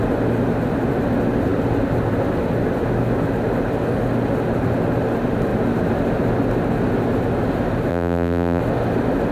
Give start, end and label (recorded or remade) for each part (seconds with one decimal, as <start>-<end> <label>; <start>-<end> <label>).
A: 0.0-7.9 recorded; 7.9-8.6 remade; 8.6-9.3 recorded